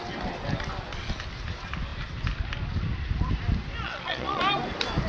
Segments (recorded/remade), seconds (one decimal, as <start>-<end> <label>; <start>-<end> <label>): 0.0-3.8 recorded; 3.8-4.4 remade; 4.4-5.1 recorded